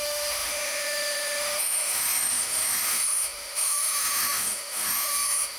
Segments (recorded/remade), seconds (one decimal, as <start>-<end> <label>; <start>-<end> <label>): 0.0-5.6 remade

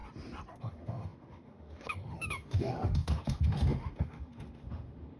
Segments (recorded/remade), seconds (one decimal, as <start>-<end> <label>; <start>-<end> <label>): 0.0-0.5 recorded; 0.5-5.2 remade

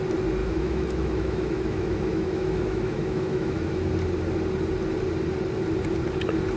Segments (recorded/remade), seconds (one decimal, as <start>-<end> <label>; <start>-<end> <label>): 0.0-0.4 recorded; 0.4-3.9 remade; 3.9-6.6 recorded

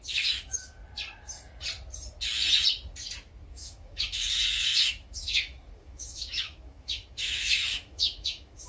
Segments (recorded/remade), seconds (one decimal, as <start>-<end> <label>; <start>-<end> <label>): 0.0-0.8 remade; 0.8-3.5 recorded; 3.5-8.7 remade

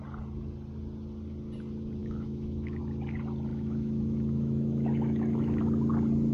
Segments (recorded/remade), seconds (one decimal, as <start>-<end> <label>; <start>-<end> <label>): 0.0-2.0 recorded; 2.0-2.8 remade; 2.8-3.5 recorded; 3.5-5.6 remade; 5.6-6.3 recorded